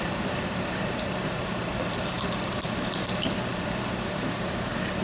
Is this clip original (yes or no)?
no